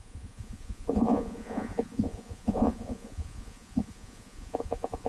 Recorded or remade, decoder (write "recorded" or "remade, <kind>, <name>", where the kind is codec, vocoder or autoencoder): remade, vocoder, Vocos